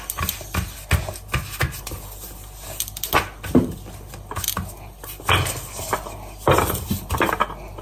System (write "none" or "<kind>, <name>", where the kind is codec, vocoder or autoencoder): none